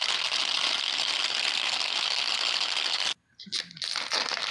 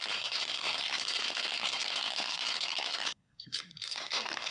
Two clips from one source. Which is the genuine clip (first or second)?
first